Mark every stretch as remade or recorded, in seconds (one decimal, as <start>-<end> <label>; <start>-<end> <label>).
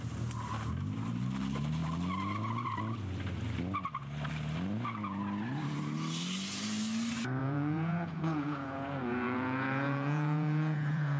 0.0-7.4 recorded; 7.4-11.2 remade